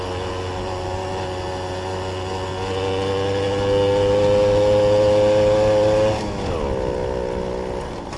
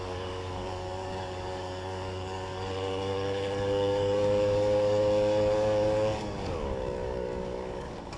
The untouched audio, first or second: first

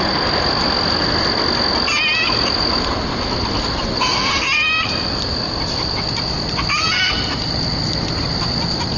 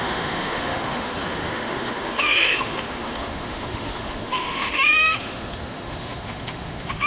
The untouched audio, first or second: first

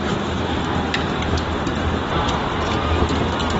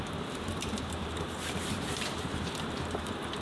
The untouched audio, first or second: first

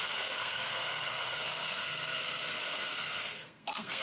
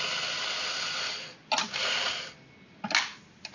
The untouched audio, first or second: second